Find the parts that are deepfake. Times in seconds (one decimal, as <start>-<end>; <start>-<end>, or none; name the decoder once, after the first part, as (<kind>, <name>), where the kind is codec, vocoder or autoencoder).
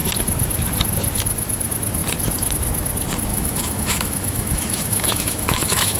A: 3.3-6.0 (autoencoder, DAC-VAE)